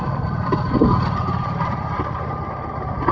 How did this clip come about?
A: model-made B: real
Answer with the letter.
A